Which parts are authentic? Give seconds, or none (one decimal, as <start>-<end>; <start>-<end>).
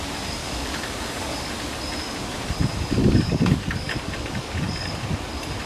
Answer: 0.0-0.4; 1.5-3.0; 5.0-5.7